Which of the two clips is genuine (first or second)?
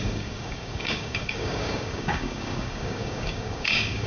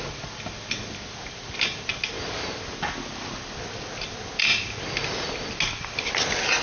second